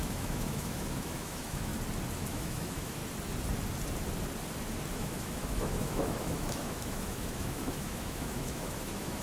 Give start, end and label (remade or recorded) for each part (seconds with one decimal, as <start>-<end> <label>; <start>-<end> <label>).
0.0-1.7 remade; 1.7-2.3 recorded; 2.3-3.0 remade; 3.0-4.9 recorded; 4.9-9.2 remade